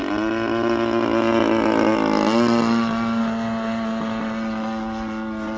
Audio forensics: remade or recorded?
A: recorded